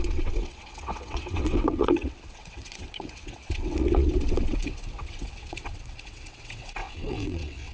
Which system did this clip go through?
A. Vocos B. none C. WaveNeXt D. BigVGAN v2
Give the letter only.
C